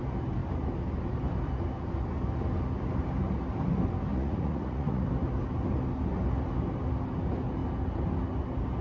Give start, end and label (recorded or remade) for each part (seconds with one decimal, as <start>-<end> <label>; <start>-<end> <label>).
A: 0.0-4.1 recorded; 4.1-5.1 remade; 5.1-8.8 recorded